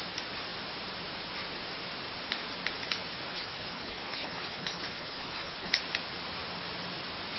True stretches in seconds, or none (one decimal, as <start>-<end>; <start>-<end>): 0.0-3.3; 5.8-7.4